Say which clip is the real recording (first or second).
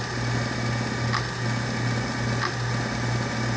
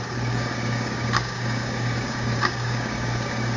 first